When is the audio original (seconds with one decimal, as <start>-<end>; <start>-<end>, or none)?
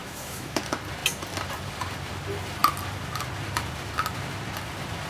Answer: 0.6-5.1